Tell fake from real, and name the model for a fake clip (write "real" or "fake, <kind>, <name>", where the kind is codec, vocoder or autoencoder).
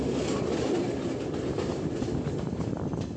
real